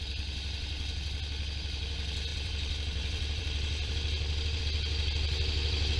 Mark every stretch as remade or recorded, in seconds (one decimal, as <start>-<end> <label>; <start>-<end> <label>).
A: 0.0-2.3 recorded; 2.3-4.6 remade; 4.6-6.0 recorded